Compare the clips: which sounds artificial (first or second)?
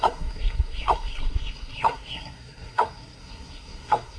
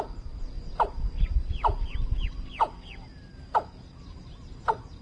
first